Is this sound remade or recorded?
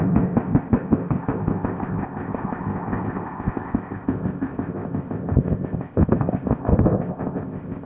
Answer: remade